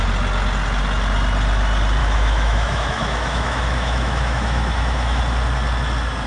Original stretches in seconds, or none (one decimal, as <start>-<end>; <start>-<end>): 0.0-2.0; 5.2-6.3